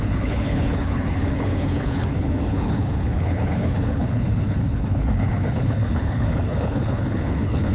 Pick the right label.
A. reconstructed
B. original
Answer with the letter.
A